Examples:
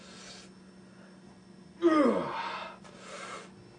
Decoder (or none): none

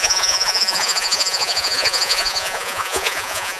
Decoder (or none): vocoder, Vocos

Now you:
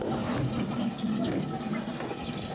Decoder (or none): none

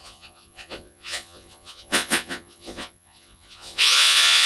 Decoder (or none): vocoder, Vocos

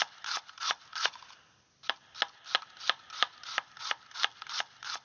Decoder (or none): none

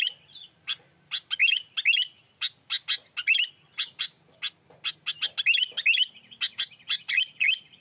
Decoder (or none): none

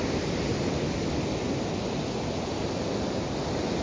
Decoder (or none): none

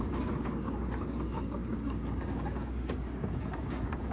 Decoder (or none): codec, DAC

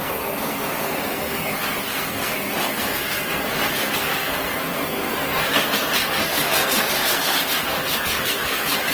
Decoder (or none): codec, SNAC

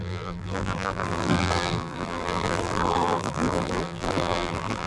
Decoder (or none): vocoder, BigVGAN v2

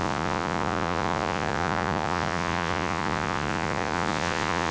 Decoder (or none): vocoder, Vocos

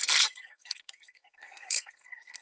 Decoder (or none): codec, SNAC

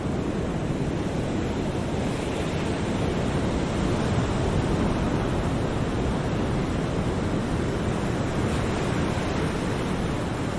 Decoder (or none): none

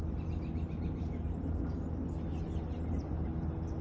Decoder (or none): none